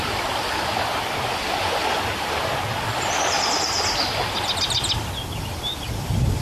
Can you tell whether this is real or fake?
real